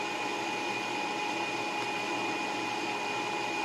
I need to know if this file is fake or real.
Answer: real